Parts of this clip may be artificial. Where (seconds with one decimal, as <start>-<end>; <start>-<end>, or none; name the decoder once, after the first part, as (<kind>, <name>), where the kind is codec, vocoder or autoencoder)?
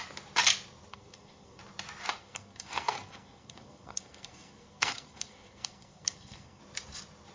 0.9-1.6 (codec, SNAC); 2.2-6.6